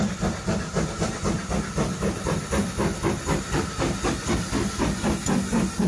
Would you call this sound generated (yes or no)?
no